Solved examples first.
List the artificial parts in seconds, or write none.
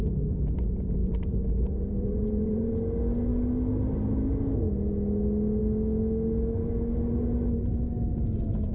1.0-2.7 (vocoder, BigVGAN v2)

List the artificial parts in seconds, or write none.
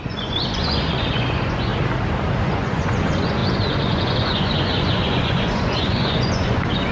0.0-1.7 (vocoder, Vocos); 2.4-6.9